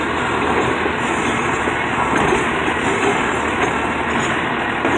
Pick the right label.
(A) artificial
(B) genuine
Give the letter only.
B